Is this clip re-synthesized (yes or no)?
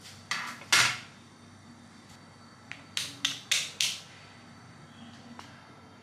no